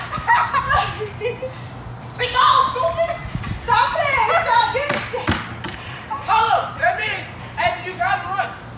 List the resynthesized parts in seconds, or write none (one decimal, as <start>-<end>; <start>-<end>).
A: 3.2-4.8; 5.7-8.4